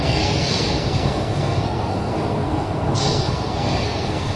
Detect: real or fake fake